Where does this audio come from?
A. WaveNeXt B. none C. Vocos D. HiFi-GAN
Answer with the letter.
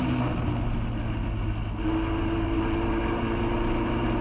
B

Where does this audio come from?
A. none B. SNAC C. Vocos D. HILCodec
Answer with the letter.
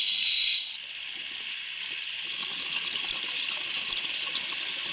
A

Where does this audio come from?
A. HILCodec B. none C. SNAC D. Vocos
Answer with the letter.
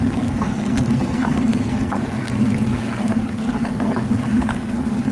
C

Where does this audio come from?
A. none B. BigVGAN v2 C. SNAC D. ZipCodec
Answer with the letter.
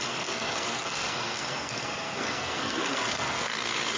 C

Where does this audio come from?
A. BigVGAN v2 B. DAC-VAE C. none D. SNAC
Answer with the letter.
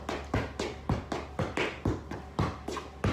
C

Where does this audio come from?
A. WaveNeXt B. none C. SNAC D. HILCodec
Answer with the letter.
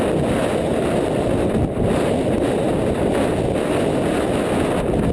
B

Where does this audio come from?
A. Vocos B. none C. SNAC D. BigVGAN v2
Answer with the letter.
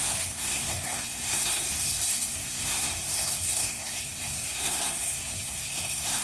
C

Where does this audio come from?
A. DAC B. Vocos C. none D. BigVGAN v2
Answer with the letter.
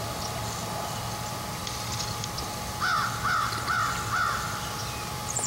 C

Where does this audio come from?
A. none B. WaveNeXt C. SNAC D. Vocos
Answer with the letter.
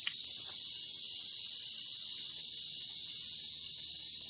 A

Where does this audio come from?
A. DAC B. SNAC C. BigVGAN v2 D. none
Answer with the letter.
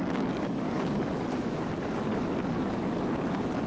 A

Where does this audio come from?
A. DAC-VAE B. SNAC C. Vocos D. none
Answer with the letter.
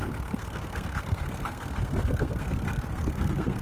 B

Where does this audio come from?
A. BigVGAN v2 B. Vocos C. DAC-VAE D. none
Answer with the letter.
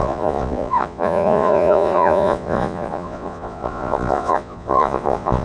B